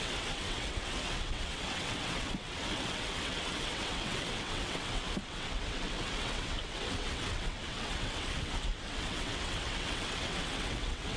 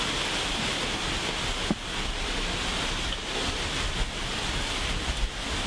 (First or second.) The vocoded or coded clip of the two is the first